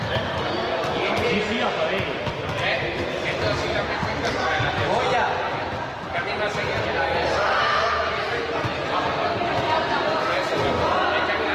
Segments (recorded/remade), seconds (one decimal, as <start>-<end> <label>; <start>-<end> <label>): 0.0-11.5 recorded